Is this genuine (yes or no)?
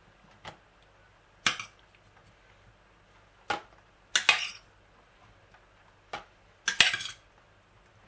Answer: yes